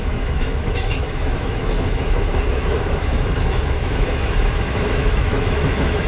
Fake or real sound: fake